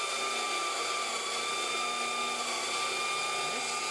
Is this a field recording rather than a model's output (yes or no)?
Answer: yes